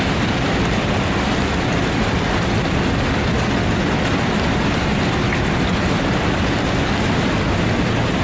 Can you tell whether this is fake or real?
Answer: real